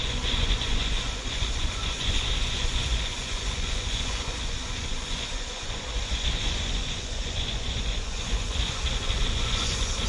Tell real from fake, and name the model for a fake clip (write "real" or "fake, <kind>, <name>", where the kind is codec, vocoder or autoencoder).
fake, vocoder, Vocos